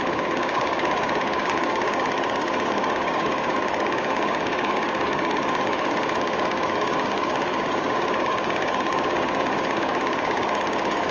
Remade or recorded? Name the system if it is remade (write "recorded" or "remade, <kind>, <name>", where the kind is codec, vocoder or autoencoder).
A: remade, codec, DAC